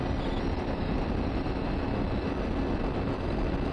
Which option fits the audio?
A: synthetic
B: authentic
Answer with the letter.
B